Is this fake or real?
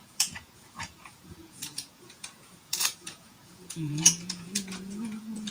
fake